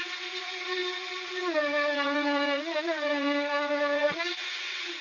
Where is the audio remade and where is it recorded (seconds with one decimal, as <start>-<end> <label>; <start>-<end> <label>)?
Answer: 0.0-5.0 remade